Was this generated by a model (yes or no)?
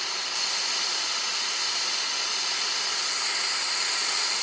no